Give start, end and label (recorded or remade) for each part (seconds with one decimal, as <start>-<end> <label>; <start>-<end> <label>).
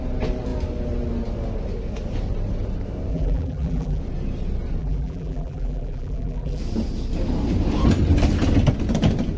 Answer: 0.0-3.1 recorded; 3.1-4.0 remade; 4.0-4.8 recorded; 4.8-6.6 remade; 6.6-9.4 recorded